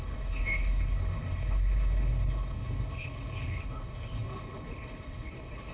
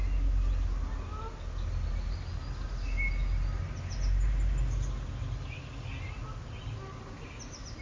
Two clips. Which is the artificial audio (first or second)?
first